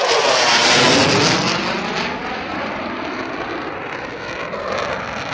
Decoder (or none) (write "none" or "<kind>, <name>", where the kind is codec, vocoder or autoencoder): none